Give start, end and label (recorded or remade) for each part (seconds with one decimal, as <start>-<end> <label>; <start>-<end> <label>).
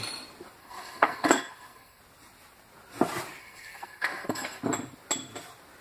0.0-0.6 recorded; 0.6-2.0 remade; 2.0-3.4 recorded; 3.4-4.6 remade; 4.6-5.8 recorded